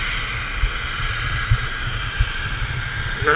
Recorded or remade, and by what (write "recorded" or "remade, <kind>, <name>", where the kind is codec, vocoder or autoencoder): recorded